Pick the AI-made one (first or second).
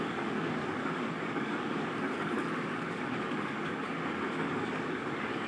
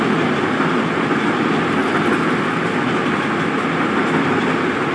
first